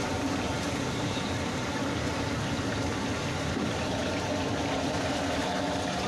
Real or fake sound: fake